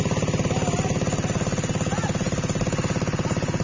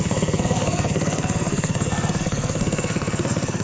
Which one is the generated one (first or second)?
second